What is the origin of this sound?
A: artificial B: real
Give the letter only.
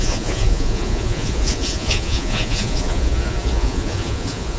A